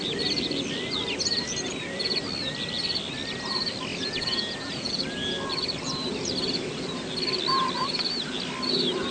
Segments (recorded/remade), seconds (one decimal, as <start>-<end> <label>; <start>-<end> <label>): 0.0-3.9 recorded; 3.9-4.9 remade; 4.9-9.1 recorded